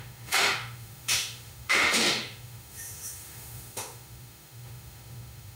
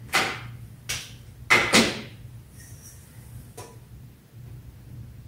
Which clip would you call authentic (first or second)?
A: second